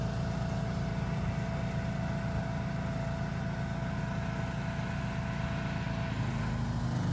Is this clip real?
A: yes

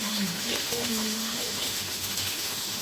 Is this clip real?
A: no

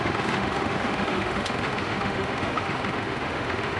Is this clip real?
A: no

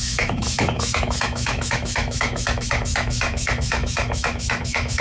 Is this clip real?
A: no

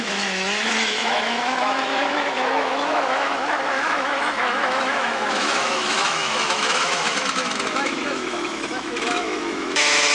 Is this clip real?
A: no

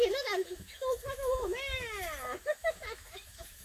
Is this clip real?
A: no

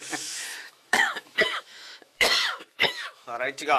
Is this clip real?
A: no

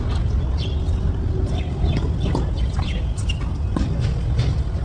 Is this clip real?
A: yes